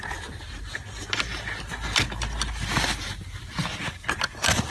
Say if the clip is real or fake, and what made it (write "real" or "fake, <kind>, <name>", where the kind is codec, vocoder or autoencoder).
real